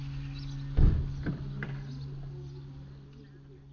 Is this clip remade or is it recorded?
recorded